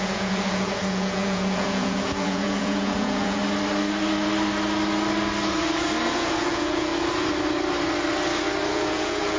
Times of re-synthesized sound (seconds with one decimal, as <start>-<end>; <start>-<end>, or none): 0.0-3.4; 6.1-6.9; 8.7-9.4